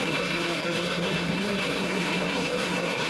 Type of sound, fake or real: fake